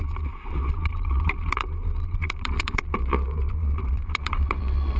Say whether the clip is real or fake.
fake